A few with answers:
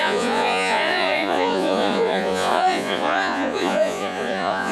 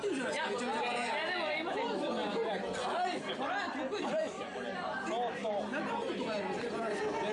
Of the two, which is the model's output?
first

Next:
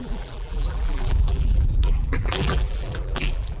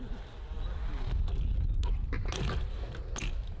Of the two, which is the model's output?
first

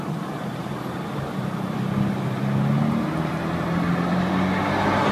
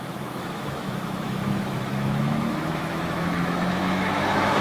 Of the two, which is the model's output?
second